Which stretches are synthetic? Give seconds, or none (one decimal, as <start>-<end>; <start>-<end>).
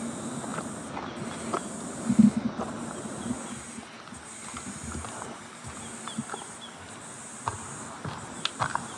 none